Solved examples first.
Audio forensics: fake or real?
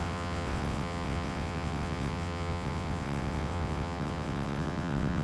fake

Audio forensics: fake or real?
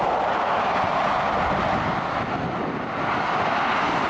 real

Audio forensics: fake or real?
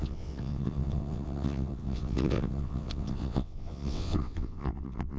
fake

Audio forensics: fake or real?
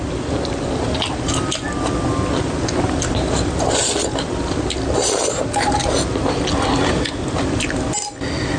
real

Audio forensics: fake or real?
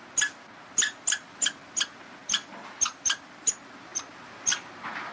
real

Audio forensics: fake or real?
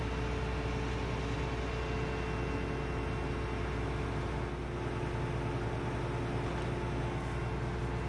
real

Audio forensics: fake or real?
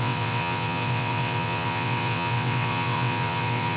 fake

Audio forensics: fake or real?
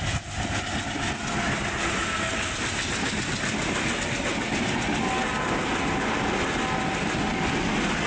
real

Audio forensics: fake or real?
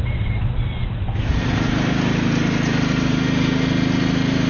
real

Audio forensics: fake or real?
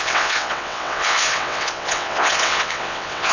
fake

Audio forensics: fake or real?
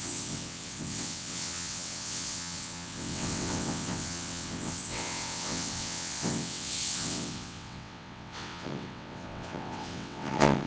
fake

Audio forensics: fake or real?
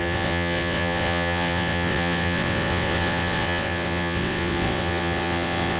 fake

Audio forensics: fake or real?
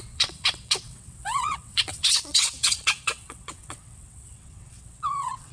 fake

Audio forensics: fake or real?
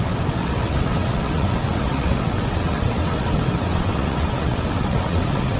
fake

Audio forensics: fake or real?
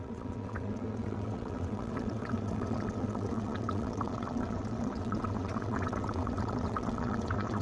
fake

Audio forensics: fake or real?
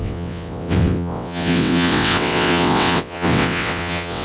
fake